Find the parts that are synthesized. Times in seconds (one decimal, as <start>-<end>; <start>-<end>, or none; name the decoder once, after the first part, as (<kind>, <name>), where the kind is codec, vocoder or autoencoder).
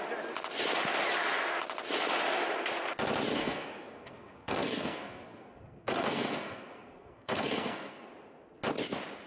3.4-8.1 (codec, SNAC)